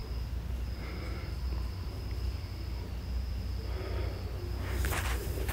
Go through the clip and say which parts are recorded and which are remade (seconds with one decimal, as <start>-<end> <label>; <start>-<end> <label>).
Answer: 0.0-5.5 recorded